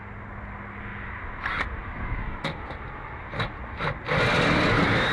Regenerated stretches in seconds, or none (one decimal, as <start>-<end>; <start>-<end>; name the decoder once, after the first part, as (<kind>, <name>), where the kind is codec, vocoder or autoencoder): 0.9-4.0 (vocoder, BigVGAN v2)